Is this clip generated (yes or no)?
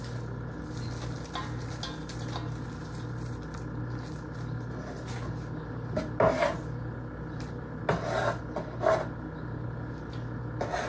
no